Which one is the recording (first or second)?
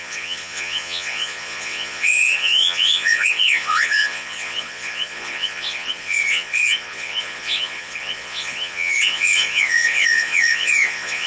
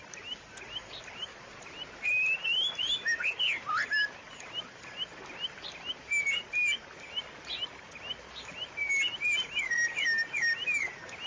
second